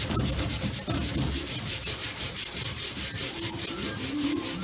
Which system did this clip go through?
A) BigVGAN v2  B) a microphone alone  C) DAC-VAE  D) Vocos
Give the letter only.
A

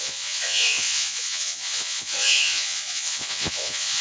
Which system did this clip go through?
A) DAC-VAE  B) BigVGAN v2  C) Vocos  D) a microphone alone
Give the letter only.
C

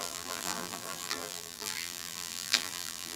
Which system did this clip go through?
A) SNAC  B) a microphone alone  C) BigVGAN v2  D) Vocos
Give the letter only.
C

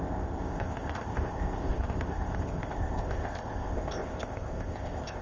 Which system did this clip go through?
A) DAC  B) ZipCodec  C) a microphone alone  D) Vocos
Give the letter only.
B